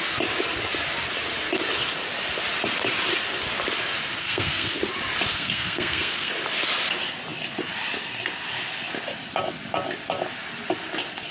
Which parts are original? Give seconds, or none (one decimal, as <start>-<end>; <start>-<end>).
0.0-4.2; 4.8-5.3; 6.3-11.3